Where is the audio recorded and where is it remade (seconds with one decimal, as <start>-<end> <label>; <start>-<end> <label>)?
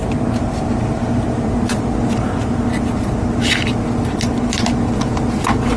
0.0-5.8 recorded